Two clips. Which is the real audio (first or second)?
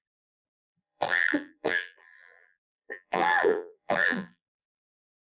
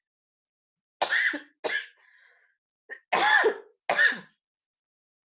second